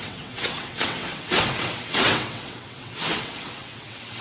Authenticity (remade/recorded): remade